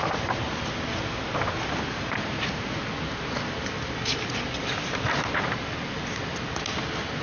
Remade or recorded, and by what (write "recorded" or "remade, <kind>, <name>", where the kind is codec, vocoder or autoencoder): recorded